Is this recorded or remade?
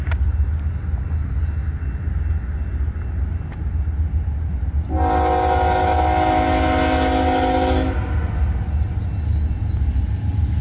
recorded